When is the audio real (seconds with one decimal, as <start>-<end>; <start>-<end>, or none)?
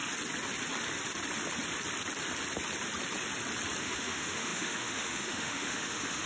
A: 0.0-3.8